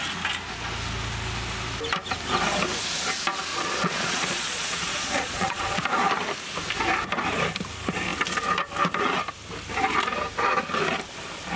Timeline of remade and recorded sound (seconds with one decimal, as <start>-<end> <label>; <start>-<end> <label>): 0.0-3.5 recorded; 3.5-5.8 remade; 5.8-11.6 recorded